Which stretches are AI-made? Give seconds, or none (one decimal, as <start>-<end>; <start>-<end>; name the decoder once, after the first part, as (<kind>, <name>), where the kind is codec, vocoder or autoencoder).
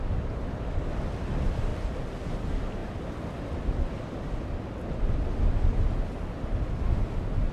none